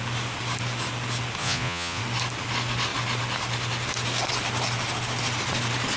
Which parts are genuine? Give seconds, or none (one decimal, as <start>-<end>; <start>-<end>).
0.0-1.4; 2.0-6.0